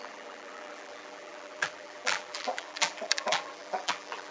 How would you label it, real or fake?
fake